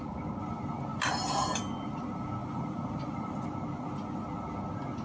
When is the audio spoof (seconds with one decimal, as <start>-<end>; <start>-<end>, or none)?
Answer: 0.9-1.6; 2.4-3.4